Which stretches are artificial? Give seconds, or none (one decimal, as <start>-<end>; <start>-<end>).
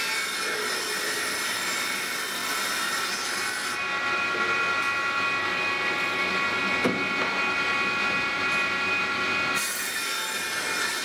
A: none